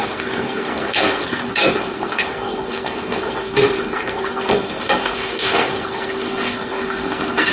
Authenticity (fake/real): fake